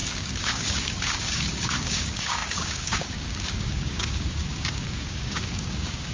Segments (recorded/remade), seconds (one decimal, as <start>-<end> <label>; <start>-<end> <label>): 0.0-6.1 remade